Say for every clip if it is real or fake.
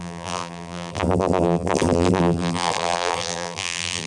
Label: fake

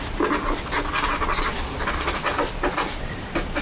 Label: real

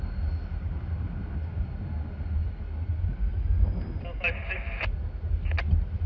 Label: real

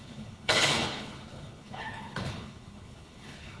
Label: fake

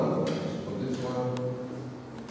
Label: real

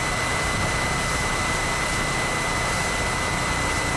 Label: real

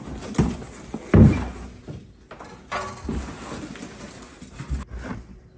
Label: real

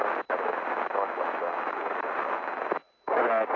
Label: real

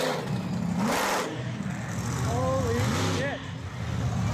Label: real